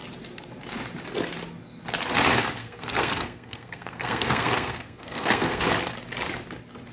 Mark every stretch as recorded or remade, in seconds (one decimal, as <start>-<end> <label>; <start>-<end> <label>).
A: 0.0-2.6 recorded; 2.6-5.6 remade; 5.6-6.9 recorded